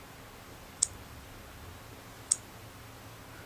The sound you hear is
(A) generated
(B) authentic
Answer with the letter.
B